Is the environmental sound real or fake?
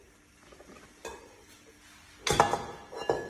real